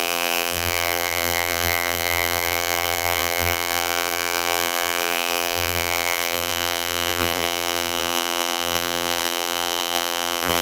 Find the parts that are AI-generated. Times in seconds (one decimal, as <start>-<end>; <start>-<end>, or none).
0.0-10.6